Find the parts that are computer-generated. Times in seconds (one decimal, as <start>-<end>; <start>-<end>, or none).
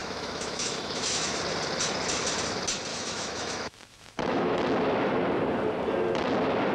0.0-1.4; 2.9-4.6